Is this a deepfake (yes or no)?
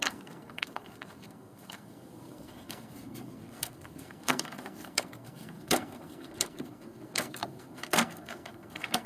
yes